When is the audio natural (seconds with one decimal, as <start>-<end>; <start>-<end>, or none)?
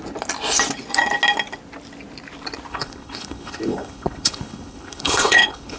0.0-2.7